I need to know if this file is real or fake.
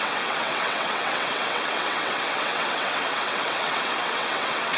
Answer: fake